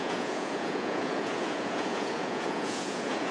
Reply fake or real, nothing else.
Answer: fake